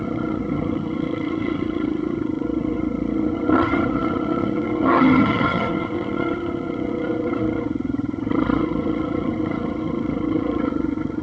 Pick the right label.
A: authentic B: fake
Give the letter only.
B